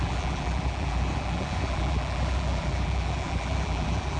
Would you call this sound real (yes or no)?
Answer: no